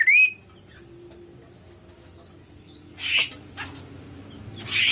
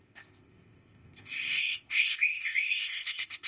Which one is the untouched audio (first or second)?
first